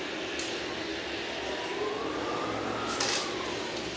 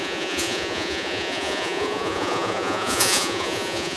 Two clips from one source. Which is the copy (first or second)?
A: second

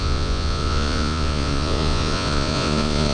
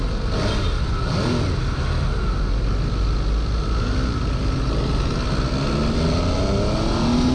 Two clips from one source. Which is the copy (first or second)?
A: first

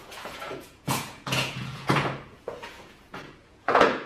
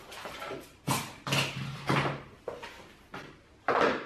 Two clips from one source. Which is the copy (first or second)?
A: first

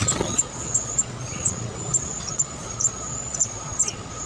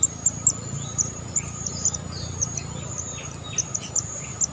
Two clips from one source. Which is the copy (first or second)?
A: first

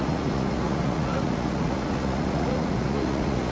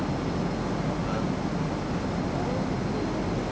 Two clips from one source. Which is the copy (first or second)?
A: first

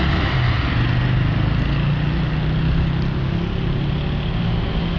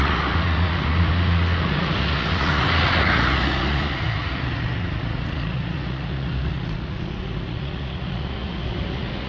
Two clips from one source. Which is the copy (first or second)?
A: second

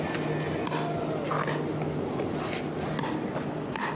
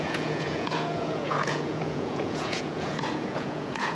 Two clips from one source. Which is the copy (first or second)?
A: second